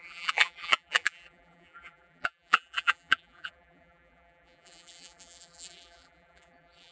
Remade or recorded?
remade